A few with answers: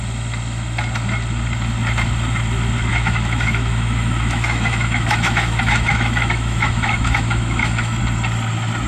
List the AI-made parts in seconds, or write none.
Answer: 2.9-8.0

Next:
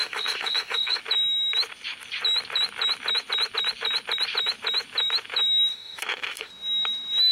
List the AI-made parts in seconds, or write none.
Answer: 0.0-1.0; 5.7-6.5